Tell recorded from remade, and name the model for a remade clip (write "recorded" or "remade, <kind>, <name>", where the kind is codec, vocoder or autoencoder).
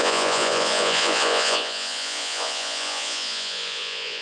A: remade, vocoder, Vocos